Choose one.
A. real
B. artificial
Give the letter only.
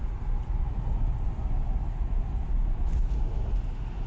A